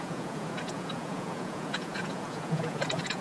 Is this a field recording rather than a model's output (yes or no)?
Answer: no